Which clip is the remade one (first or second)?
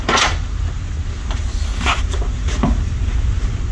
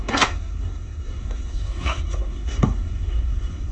second